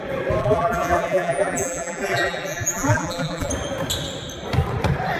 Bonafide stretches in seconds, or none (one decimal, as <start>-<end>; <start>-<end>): 0.0-0.4; 3.5-5.2

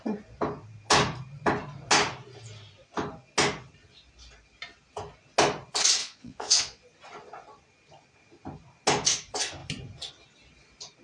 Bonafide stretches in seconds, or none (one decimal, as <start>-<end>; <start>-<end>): 0.0-6.0; 6.8-11.0

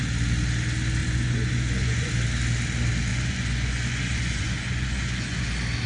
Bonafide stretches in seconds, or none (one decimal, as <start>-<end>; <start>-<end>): 0.0-1.0; 2.1-3.1; 5.5-5.9

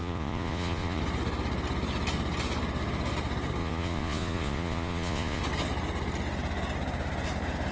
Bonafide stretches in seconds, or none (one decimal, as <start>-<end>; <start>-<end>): 1.0-3.6; 5.4-7.7

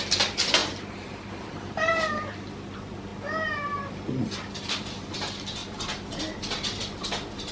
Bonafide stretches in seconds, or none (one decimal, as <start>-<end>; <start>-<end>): 0.0-7.5

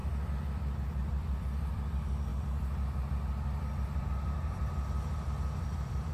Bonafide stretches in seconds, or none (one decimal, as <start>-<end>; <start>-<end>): 2.3-4.0